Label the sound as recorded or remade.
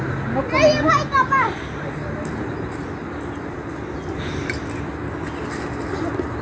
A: recorded